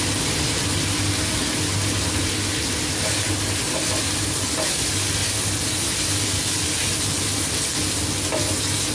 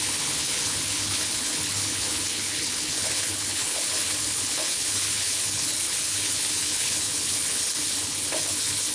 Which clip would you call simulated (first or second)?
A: second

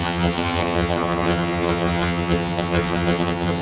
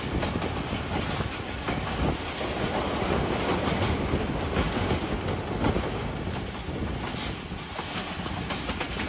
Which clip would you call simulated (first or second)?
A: first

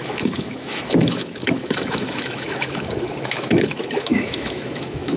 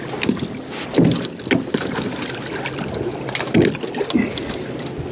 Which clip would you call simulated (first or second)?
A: first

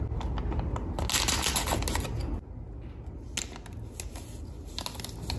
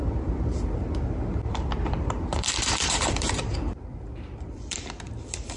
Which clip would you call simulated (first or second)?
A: second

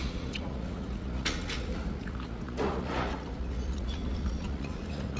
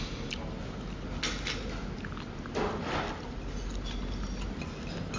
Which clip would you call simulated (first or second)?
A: first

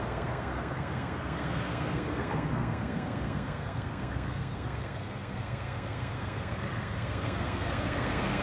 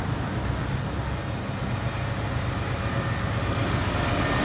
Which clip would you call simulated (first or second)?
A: first